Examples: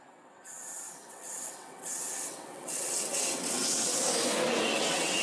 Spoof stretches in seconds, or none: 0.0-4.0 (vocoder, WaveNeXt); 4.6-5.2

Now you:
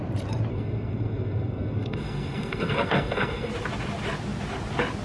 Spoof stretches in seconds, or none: 0.5-3.5 (codec, SNAC)

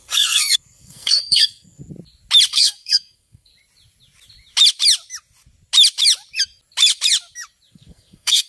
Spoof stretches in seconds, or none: 0.0-1.8 (codec, SNAC); 2.5-3.5; 7.7-8.5

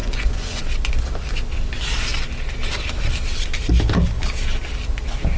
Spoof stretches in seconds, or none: 0.0-0.6 (vocoder, Vocos)

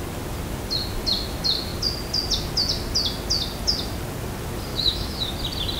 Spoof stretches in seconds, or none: 4.7-5.3 (autoencoder, DAC-VAE)

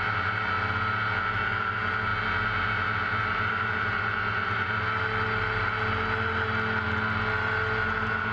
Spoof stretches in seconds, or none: none

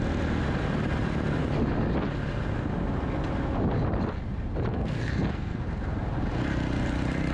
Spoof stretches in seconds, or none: 4.7-5.6 (codec, SNAC)